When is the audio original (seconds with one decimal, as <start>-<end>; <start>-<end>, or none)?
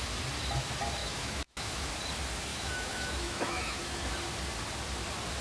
0.0-1.0; 1.9-2.5; 4.1-5.4